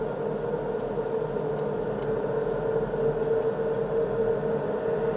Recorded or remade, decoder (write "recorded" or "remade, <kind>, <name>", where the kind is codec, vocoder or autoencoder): recorded